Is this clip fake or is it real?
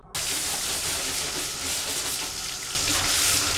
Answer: real